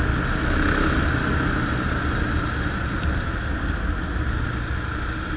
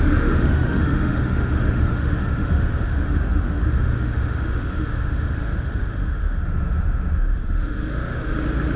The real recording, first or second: first